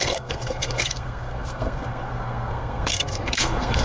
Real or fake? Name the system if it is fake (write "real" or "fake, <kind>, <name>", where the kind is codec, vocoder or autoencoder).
fake, codec, SNAC